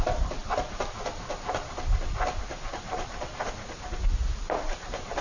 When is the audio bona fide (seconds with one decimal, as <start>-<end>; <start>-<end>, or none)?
0.0-5.2